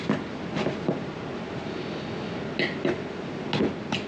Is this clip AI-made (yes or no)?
no